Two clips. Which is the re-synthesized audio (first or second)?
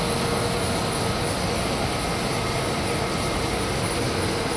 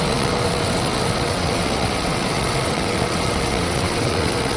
second